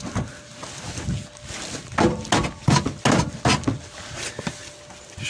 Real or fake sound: real